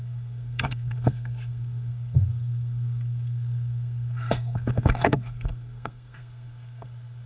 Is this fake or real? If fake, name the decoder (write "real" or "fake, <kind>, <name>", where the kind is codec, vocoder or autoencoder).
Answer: fake, codec, SNAC